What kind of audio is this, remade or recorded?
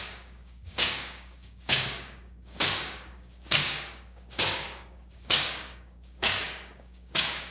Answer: remade